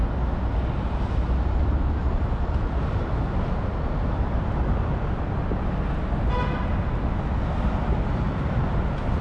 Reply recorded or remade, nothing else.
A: recorded